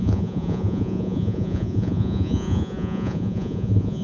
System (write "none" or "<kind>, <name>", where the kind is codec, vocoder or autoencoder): vocoder, Vocos